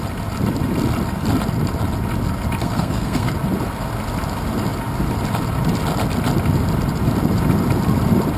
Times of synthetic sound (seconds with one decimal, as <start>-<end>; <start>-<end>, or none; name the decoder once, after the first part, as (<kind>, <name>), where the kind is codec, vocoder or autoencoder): 2.6-3.3 (codec, SNAC)

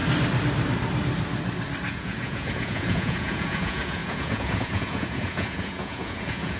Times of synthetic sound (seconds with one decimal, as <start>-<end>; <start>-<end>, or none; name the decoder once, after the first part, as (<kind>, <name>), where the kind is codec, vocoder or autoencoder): 1.9-6.6 (vocoder, Vocos)

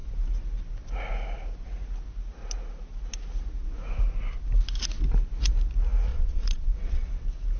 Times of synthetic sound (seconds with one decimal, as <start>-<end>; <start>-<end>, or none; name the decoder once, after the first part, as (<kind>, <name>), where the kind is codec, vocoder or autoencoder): 6.1-7.1 (vocoder, Vocos)

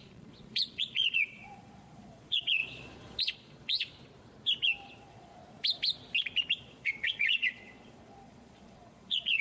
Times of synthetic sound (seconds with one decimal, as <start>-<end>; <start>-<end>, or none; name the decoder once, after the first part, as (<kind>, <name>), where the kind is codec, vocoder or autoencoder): 0.0-3.9 (vocoder, Vocos); 5.0-5.4; 6.6-9.4

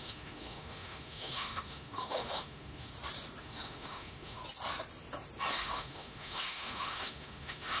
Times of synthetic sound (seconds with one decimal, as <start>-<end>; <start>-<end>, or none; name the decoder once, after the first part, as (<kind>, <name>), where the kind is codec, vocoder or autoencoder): 0.0-2.9 (autoencoder, DAC-VAE); 3.4-4.4; 5.5-7.8

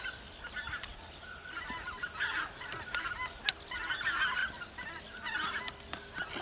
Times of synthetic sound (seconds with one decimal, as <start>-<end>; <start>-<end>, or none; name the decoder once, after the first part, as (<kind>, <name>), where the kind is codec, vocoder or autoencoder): none